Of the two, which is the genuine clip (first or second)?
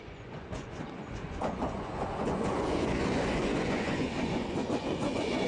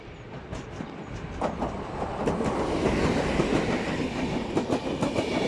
second